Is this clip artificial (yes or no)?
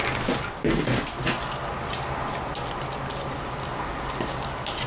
no